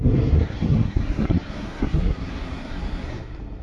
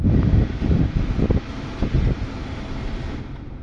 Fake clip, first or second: first